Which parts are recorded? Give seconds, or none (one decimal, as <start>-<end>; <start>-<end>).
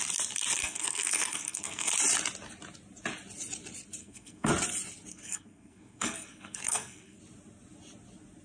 0.0-0.6; 1.9-4.0; 4.5-5.1; 7.2-8.4